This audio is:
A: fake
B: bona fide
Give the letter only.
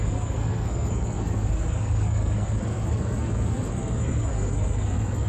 A